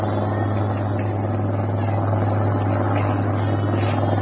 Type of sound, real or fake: real